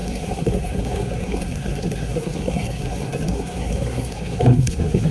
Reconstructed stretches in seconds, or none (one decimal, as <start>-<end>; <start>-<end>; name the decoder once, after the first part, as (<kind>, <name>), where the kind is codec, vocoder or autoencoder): 0.0-5.1 (codec, SNAC)